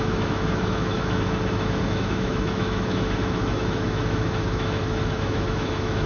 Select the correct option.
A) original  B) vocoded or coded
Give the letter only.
B